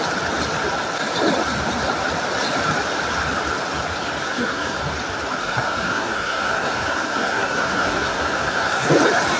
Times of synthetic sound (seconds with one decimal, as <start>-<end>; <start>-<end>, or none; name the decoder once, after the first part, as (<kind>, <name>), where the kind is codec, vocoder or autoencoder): 4.2-4.8 (codec, SNAC); 5.4-8.9